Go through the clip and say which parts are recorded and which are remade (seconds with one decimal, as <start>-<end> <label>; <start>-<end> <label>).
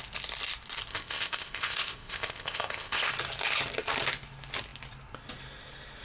0.0-0.9 recorded; 0.9-3.1 remade; 3.1-6.0 recorded